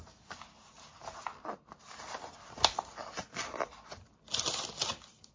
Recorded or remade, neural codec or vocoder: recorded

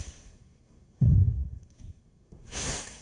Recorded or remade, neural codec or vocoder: remade, codec, SNAC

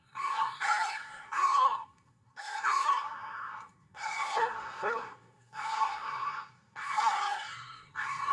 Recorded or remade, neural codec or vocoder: remade, codec, SNAC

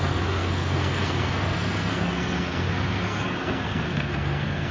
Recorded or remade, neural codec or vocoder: remade, codec, SNAC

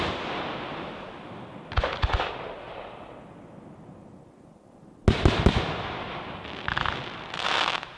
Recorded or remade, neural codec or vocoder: recorded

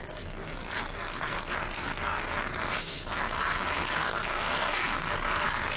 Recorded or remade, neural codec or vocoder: remade, codec, SNAC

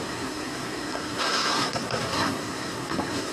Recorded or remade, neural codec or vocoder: remade, codec, SNAC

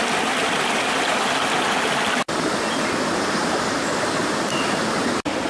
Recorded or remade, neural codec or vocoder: recorded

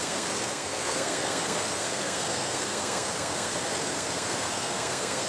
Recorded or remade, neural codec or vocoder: remade, codec, SNAC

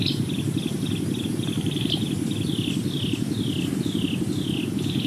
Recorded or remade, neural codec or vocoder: recorded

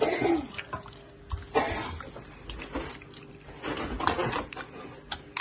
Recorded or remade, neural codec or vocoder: recorded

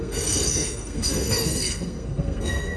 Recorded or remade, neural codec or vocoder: remade, codec, SNAC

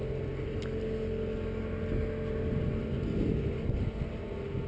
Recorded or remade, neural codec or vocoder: recorded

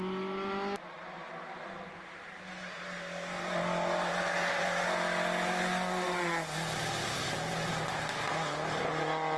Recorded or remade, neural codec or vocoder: recorded